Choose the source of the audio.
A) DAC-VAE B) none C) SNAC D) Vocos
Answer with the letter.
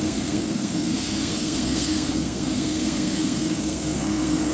C